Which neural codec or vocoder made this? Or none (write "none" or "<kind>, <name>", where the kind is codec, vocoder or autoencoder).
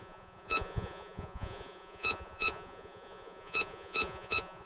vocoder, Vocos